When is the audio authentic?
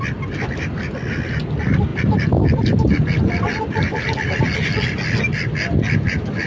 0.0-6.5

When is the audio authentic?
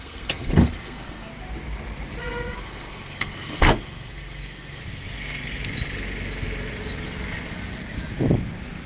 1.3-2.2; 4.8-8.9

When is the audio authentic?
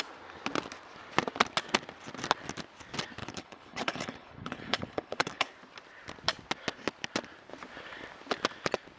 0.0-3.2; 5.5-9.0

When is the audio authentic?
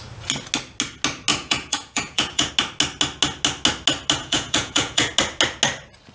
0.0-1.3; 2.5-4.2; 5.1-6.1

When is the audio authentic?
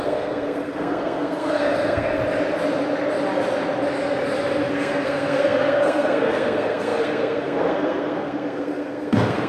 2.2-4.7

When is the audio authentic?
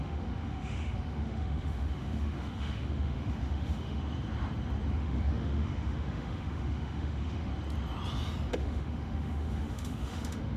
4.0-4.9; 7.5-8.5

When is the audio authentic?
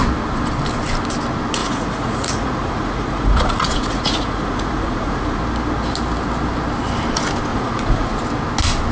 0.0-1.6; 5.4-7.5; 8.2-8.9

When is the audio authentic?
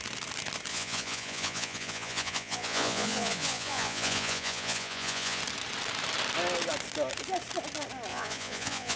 0.0-0.7; 5.4-8.1